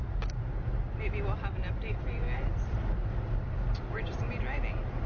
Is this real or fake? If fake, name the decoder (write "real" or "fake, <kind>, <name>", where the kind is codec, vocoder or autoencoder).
real